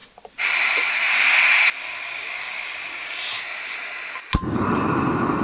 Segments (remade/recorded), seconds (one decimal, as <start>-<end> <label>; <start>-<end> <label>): 0.0-1.8 recorded; 1.8-3.2 remade; 3.2-5.4 recorded